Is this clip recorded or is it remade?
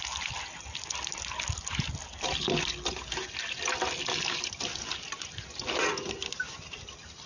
recorded